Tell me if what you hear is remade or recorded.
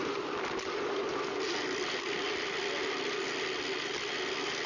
recorded